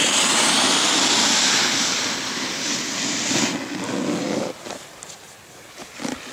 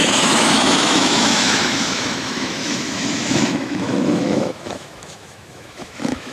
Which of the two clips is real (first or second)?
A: first